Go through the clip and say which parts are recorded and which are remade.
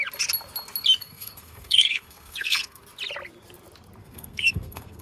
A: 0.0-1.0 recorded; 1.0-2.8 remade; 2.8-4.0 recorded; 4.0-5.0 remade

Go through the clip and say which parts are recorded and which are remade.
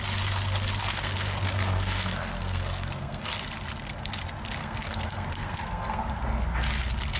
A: 0.0-0.8 recorded; 0.8-3.2 remade; 3.2-4.6 recorded; 4.6-6.1 remade; 6.1-7.2 recorded